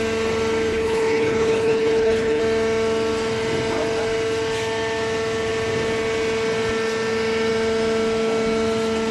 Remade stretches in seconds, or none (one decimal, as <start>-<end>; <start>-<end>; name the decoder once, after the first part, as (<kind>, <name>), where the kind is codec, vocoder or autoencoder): 0.7-2.4 (codec, HILCodec)